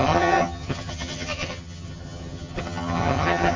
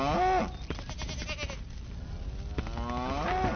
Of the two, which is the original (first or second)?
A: second